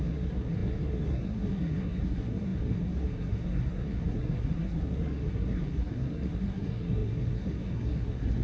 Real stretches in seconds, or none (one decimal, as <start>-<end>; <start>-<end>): none